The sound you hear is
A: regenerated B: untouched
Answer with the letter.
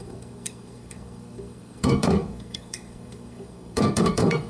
A